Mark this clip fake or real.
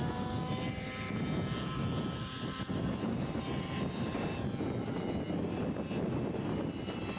real